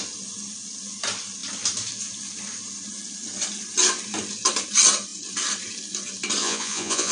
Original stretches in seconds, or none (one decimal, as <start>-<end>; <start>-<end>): 0.0-6.4